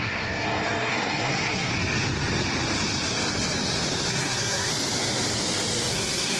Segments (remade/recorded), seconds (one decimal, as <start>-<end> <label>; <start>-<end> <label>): 0.0-1.7 remade; 1.7-4.1 recorded; 4.1-4.7 remade; 4.7-5.9 recorded; 5.9-6.4 remade